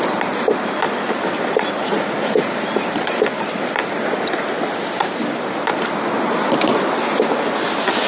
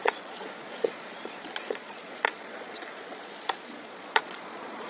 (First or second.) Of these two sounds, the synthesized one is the second